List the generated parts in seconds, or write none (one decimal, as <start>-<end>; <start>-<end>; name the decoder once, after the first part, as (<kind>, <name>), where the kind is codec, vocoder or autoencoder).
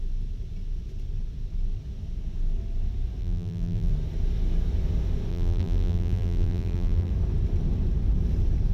3.2-3.9 (vocoder, BigVGAN v2); 5.3-7.1